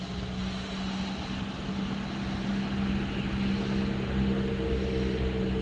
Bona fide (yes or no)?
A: yes